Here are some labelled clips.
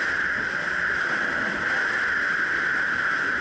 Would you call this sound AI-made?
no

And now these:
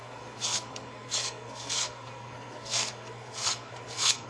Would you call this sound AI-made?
yes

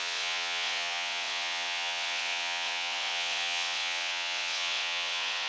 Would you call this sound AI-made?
yes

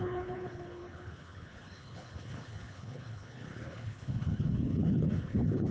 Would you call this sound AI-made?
yes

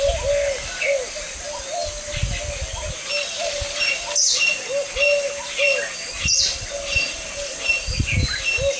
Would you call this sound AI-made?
no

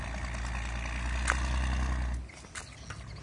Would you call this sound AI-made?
no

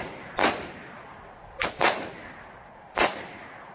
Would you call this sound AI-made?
no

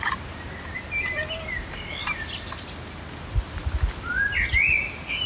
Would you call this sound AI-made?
no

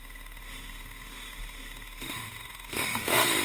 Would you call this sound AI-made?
yes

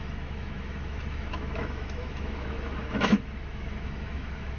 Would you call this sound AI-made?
yes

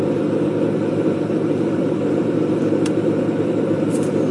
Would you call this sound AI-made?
yes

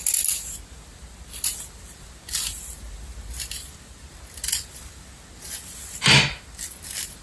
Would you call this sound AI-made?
no